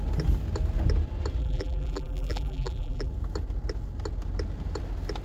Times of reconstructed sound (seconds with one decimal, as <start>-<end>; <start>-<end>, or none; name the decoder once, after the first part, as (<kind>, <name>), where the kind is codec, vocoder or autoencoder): 1.4-3.1 (vocoder, BigVGAN v2)

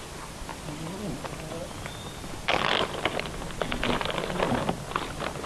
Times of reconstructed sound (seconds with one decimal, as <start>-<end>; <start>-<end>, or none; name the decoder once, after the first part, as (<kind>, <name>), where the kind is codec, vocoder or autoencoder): 0.5-1.2 (vocoder, BigVGAN v2)

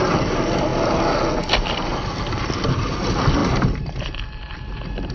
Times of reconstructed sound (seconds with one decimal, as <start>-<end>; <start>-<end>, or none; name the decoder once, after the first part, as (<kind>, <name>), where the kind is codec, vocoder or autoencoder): 0.0-0.7 (vocoder, BigVGAN v2); 2.5-5.1

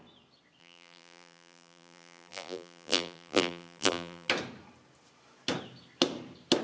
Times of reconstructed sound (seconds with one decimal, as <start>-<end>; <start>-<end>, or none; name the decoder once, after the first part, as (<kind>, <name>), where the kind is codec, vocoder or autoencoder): 0.6-4.3 (vocoder, BigVGAN v2)

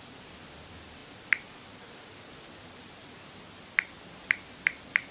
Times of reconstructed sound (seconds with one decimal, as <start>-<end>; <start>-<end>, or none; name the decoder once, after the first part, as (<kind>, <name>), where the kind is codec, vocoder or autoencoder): none

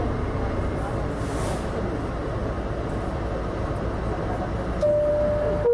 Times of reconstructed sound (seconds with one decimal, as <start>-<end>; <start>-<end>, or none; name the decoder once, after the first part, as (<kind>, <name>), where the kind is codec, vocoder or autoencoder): none